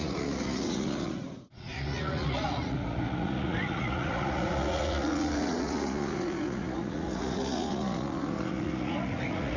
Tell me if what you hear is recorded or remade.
remade